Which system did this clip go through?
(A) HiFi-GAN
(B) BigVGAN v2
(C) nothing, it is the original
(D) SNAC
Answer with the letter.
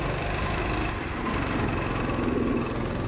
C